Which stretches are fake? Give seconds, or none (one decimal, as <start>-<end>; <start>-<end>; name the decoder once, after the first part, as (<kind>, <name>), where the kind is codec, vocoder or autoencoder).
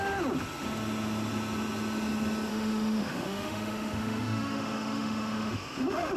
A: 2.5-6.2 (autoencoder, DAC-VAE)